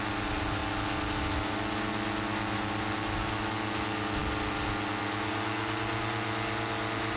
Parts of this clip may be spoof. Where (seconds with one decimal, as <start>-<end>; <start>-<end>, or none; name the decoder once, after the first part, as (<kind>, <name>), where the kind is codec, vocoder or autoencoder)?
none